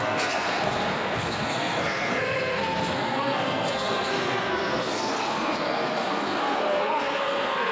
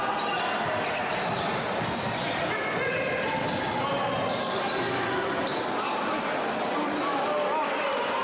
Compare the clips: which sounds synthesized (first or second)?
first